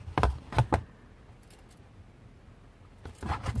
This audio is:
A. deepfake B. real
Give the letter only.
B